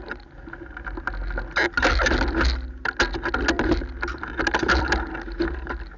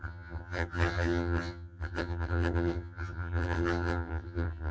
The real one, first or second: first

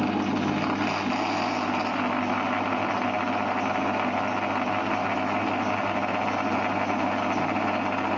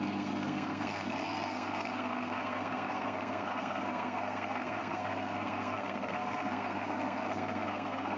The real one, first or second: first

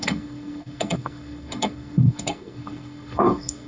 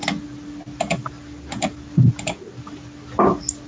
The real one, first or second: second